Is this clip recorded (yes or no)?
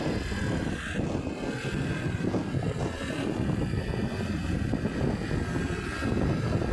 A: yes